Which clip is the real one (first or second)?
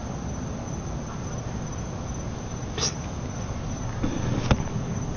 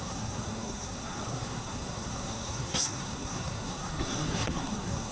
first